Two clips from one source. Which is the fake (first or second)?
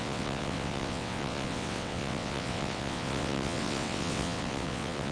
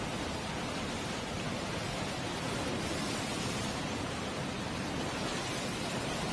first